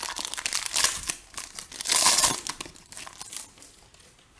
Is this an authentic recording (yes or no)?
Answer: yes